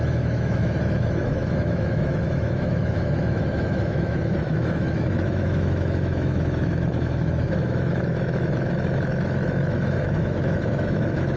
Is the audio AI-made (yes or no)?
yes